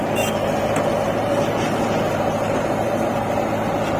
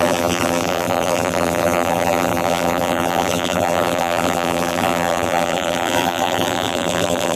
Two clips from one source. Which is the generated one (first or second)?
second